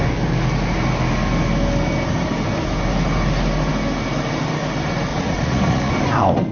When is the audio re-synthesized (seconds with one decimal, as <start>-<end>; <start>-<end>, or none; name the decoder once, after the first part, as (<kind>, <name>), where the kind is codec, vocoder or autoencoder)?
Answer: 5.1-5.9 (vocoder, Vocos)